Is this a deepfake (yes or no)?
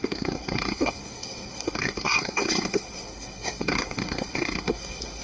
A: yes